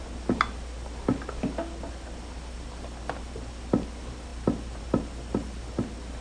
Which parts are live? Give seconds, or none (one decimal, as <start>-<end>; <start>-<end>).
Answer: 0.0-6.2

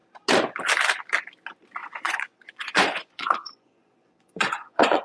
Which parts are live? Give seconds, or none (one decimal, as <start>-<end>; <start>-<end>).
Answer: 0.0-1.8

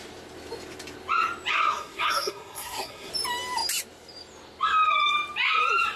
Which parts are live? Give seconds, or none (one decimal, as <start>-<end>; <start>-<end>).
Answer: 0.0-1.5; 3.1-6.0

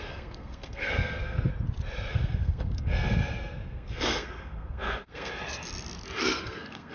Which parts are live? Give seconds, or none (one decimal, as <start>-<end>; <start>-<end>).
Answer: 1.5-2.1; 5.3-6.2

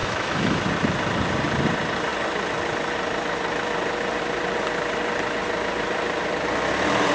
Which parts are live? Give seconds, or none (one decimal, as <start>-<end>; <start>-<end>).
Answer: 0.6-7.1

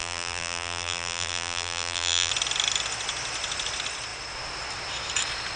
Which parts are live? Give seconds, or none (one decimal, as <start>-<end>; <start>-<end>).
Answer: 2.3-5.6

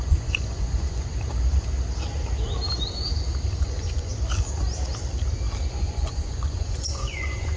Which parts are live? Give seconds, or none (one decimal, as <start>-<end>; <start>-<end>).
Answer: 1.1-3.6; 4.1-5.7